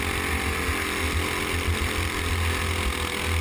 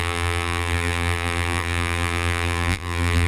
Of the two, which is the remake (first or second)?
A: second